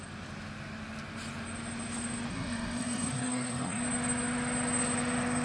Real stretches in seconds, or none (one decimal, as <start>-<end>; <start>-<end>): 0.0-2.3; 3.8-5.4